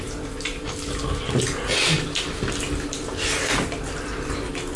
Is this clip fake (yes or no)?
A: no